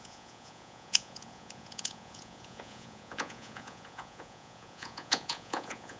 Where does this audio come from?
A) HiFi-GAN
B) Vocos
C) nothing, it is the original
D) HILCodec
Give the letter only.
B